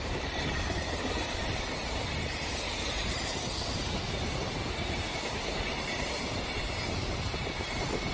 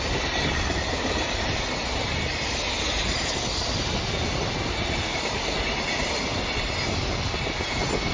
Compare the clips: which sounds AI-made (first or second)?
first